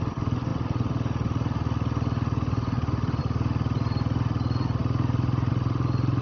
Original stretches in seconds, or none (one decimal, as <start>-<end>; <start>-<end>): 0.0-6.2